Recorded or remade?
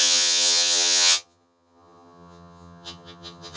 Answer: remade